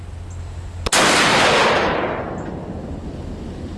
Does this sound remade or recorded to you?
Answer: recorded